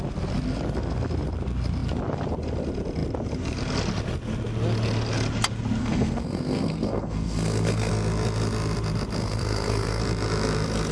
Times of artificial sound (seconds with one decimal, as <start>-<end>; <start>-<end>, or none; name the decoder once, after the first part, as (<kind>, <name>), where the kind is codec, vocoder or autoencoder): 5.8-7.9 (codec, SNAC); 9.2-10.0